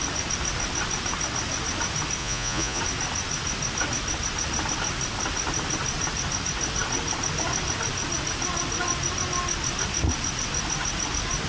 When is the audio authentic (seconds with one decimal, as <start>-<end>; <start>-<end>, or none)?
0.0-2.2; 2.8-11.5